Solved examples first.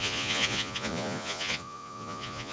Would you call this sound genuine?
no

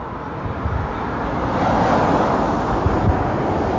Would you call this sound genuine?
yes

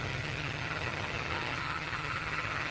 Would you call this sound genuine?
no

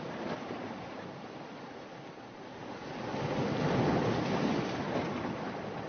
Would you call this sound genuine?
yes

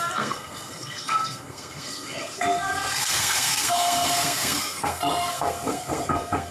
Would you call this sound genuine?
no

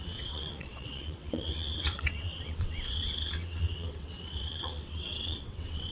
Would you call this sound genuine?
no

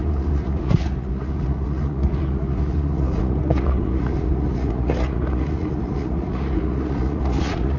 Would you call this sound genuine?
no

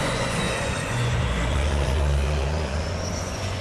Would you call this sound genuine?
no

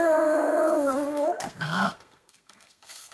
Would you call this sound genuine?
no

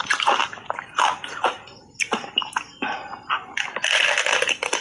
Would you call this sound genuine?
yes